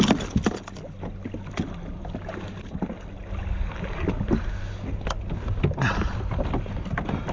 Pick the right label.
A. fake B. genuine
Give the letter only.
B